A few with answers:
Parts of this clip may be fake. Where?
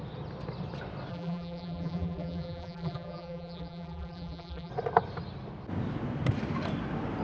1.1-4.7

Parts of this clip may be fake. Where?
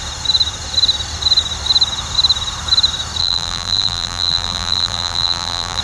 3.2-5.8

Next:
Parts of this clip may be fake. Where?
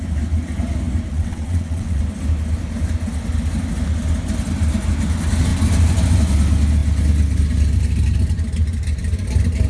1.1-2.0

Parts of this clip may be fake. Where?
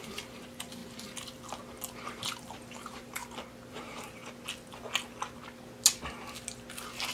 0.0-0.8; 2.1-3.2; 3.7-4.2